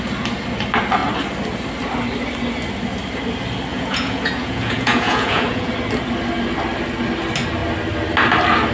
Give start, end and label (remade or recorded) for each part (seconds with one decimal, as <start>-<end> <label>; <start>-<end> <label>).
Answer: 0.0-3.7 recorded; 3.7-5.7 remade; 5.7-8.7 recorded